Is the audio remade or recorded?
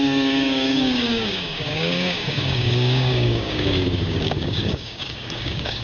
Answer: remade